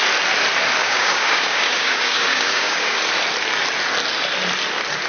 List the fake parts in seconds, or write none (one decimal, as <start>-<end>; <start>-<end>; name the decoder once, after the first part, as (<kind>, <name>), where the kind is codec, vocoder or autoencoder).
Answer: 0.8-3.0 (codec, DAC)

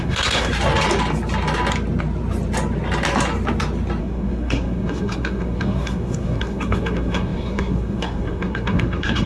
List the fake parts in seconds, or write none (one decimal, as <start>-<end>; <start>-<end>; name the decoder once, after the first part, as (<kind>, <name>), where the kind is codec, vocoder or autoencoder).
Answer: 0.0-0.5 (codec, SNAC); 4.0-9.3

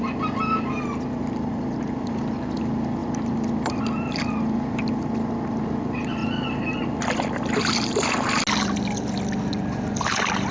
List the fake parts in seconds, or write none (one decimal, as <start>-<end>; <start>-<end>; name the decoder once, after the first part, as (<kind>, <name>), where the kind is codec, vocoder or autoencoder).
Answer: 3.0-3.8 (vocoder, BigVGAN v2); 6.2-6.8

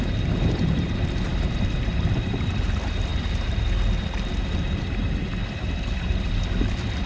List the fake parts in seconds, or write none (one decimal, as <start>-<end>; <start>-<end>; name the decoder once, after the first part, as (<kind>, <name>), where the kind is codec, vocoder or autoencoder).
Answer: 0.0-3.1 (vocoder, BigVGAN v2); 4.3-7.1

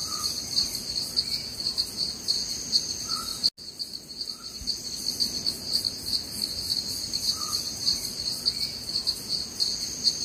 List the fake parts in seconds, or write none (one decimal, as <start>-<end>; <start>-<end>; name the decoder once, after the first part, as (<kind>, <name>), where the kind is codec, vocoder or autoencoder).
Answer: 7.8-8.4 (vocoder, BigVGAN v2)